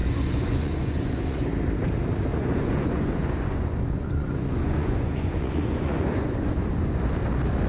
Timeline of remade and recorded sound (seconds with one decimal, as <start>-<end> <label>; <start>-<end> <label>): 0.0-1.5 remade; 1.5-2.3 recorded; 2.3-6.9 remade; 6.9-7.7 recorded